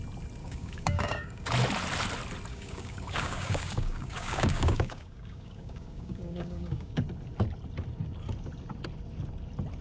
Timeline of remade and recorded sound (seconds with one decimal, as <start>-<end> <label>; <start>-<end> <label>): 0.0-0.4 recorded; 0.4-1.5 remade; 1.5-2.5 recorded; 2.5-7.0 remade; 7.0-9.8 recorded